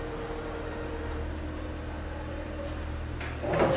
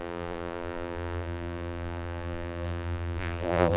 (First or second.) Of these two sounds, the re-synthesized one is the second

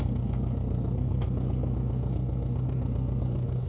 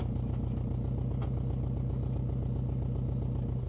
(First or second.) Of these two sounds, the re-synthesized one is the first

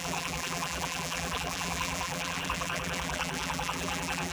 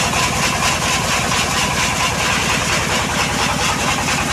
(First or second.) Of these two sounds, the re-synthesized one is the first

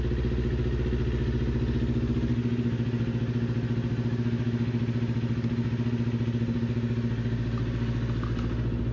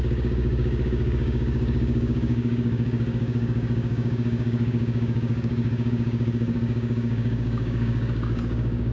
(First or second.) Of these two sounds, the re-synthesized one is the second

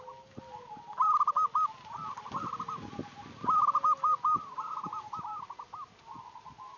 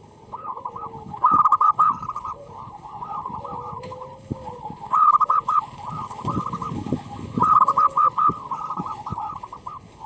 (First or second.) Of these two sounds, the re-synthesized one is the second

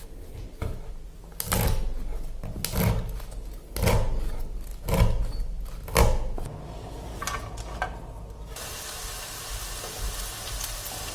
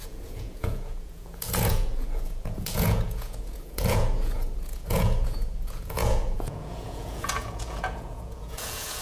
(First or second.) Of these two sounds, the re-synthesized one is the second